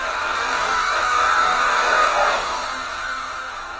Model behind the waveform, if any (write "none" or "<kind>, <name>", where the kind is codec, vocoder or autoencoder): codec, DAC